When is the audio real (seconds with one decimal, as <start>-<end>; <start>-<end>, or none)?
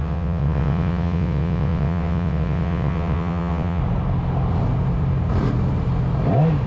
3.8-6.7